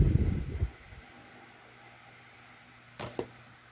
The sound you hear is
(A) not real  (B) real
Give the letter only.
B